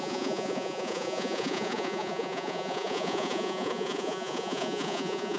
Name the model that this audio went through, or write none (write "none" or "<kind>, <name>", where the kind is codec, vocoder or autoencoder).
vocoder, Vocos